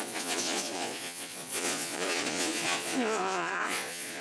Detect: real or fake fake